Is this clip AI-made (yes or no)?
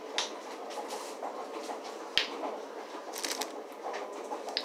no